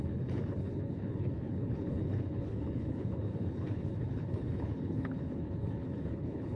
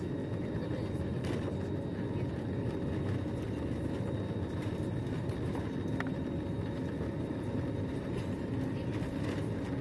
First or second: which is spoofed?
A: first